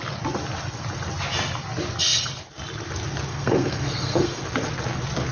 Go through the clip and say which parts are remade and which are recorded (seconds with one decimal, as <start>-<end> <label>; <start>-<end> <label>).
0.0-3.3 recorded; 3.3-4.4 remade; 4.4-5.3 recorded